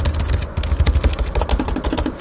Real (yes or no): yes